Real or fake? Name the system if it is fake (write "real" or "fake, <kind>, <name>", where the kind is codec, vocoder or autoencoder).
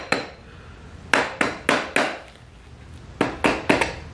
real